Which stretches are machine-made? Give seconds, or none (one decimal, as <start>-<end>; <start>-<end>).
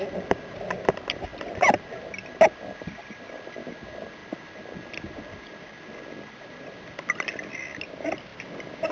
1.3-2.0